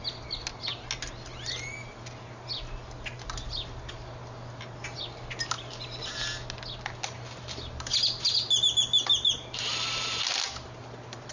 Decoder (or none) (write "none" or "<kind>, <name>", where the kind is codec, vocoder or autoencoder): none